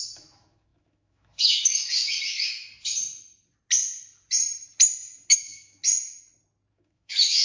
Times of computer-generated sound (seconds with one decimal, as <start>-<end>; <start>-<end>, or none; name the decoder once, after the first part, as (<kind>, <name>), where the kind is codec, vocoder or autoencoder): 0.0-2.7 (autoencoder, DAC-VAE); 5.3-5.8; 6.7-7.4